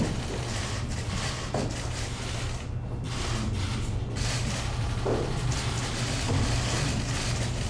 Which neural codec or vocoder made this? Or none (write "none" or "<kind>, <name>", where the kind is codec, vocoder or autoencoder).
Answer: none